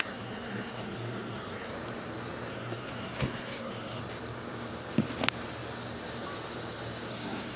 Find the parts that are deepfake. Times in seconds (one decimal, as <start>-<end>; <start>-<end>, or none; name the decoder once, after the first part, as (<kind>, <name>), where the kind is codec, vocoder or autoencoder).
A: 0.0-1.7 (codec, SNAC); 2.5-4.0; 7.1-7.6